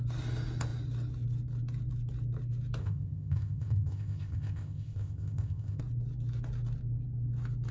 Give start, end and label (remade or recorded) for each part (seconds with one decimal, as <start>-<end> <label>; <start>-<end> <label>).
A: 0.0-2.8 recorded; 2.8-5.8 remade; 5.8-7.7 recorded